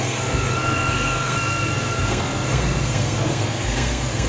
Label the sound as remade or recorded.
remade